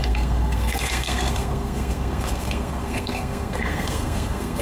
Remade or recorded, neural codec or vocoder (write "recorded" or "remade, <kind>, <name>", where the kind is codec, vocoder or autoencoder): remade, codec, SNAC